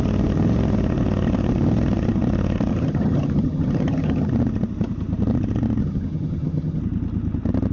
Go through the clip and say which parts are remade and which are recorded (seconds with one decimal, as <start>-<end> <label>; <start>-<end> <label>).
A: 0.0-2.7 recorded; 2.7-4.3 remade; 4.3-5.8 recorded; 5.8-6.8 remade; 6.8-7.7 recorded

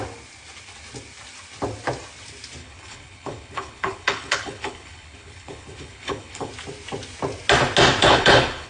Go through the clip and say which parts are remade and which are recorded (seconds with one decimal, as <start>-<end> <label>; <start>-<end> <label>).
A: 0.0-2.6 recorded; 2.6-6.5 remade; 6.5-8.0 recorded; 8.0-8.7 remade